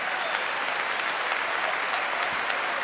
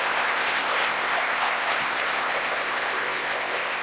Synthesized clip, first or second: second